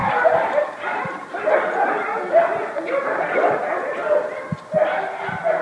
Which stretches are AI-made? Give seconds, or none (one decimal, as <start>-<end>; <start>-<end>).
none